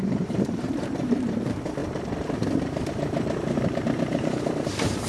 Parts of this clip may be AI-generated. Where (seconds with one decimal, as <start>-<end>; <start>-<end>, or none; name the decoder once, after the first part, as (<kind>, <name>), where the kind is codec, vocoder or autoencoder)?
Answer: 0.0-1.8 (vocoder, BigVGAN v2); 2.9-5.1